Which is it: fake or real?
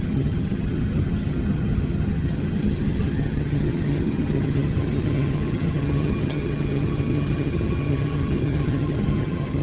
fake